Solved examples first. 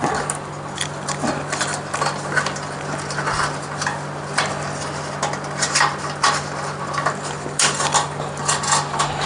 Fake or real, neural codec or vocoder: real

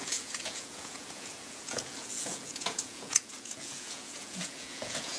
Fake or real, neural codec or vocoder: fake, vocoder, Vocos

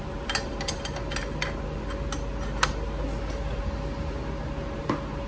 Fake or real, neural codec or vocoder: real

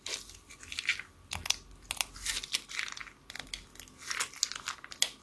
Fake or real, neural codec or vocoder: real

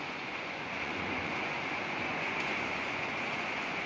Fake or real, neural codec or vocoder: fake, vocoder, Vocos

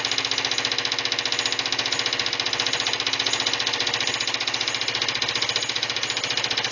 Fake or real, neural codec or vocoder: real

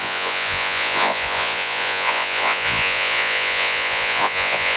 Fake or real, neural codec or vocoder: fake, vocoder, Vocos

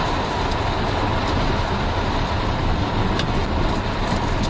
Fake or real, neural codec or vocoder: real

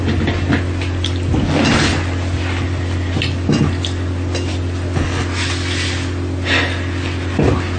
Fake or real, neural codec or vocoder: real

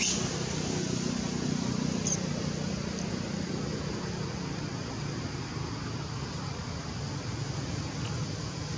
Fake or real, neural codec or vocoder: real